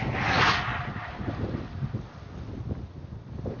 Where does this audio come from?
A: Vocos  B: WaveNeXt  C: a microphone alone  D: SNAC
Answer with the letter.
C